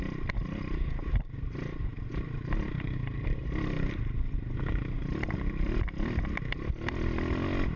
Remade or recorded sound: recorded